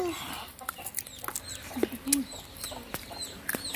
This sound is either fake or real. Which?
real